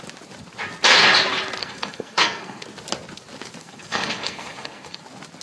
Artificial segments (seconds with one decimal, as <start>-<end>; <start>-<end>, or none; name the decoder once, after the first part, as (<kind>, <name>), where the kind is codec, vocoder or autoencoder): 1.6-2.6 (codec, SNAC); 3.6-5.0